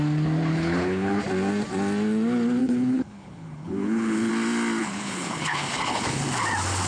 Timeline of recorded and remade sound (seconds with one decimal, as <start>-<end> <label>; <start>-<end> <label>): 0.0-0.5 recorded; 0.5-1.2 remade; 1.2-2.6 recorded; 2.6-4.3 remade; 4.3-4.8 recorded; 4.8-6.2 remade; 6.2-6.9 recorded